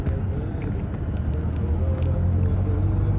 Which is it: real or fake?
real